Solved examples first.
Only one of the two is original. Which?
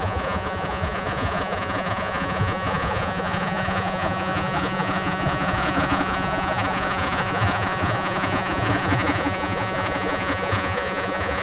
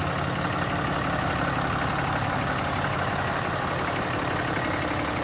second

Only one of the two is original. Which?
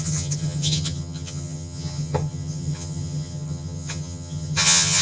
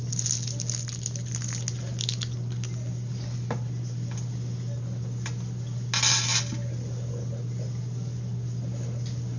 second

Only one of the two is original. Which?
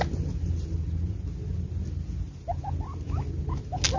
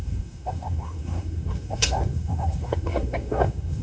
first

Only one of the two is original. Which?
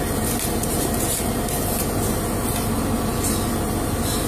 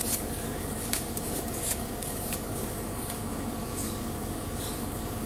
first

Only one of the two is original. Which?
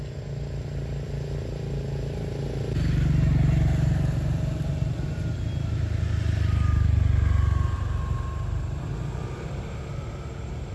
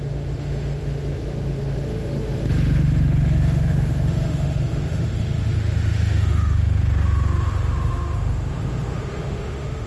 first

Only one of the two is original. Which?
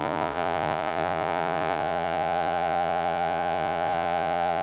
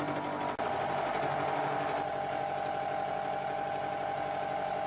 second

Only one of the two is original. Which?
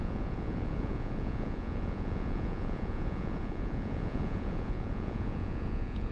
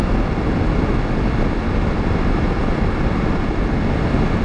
second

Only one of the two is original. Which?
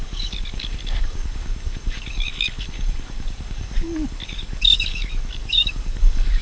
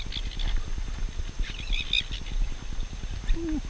second